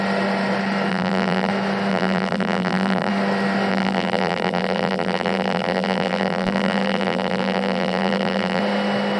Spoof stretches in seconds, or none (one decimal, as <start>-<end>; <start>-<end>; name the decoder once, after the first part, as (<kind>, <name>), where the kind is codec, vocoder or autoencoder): 0.9-1.5 (vocoder, BigVGAN v2); 1.9-3.1; 3.7-8.6